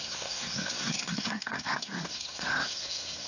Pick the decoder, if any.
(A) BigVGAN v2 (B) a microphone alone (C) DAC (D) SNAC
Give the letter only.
D